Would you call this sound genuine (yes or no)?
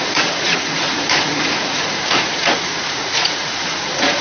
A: no